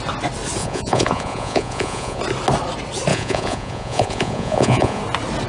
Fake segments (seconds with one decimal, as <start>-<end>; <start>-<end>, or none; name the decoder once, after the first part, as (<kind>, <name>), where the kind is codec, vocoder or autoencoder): 0.6-2.2 (vocoder, Vocos); 3.1-5.0